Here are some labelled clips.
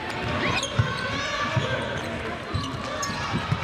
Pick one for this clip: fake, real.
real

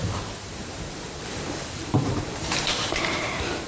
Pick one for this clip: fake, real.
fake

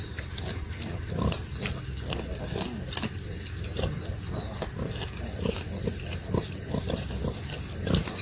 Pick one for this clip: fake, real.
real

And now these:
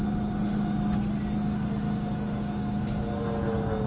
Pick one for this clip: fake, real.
real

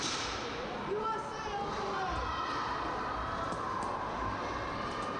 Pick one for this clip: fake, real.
real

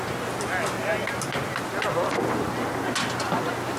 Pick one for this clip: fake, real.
real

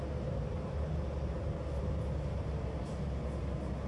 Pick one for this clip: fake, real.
real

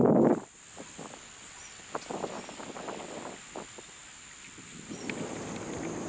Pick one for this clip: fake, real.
real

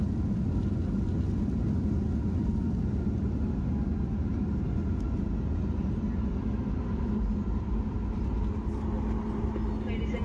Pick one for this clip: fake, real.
real